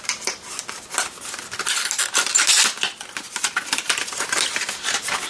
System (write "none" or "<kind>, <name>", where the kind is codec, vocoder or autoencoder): none